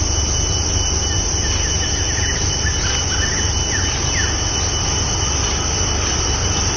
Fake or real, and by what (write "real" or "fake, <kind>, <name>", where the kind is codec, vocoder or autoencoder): real